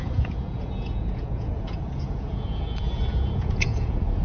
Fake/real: fake